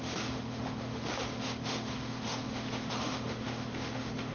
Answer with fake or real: fake